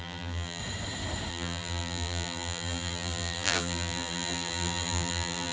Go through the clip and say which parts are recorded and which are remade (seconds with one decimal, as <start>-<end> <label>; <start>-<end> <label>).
0.0-0.6 remade; 0.6-1.3 recorded; 1.3-5.5 remade